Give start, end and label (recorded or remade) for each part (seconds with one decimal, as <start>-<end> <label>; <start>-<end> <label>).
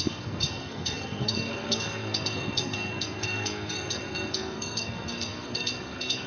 0.0-6.3 remade